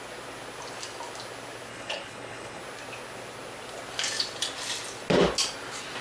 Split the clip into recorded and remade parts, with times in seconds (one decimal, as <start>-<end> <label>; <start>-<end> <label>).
0.0-1.7 recorded; 1.7-2.6 remade; 2.6-6.0 recorded